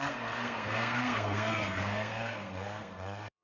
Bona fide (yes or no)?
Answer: no